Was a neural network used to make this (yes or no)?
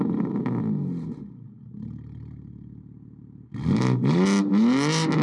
no